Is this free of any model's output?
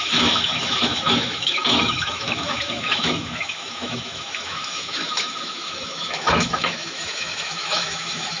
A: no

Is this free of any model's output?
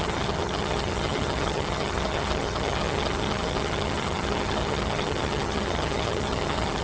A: no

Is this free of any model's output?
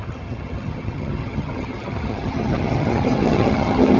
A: no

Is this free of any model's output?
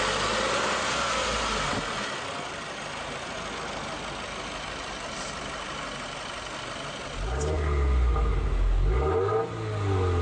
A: yes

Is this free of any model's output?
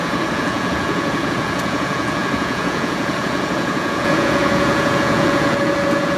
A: no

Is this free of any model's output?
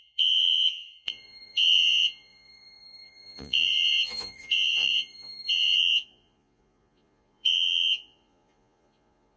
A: no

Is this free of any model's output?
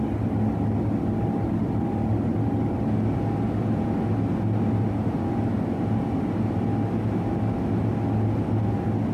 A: yes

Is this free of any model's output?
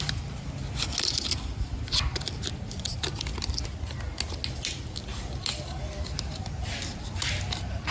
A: yes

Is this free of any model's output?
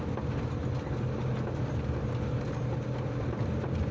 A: yes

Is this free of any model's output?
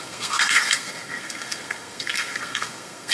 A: no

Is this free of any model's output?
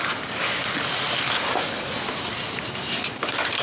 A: yes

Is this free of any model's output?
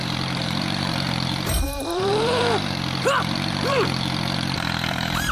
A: no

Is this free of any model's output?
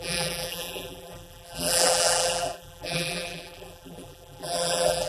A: no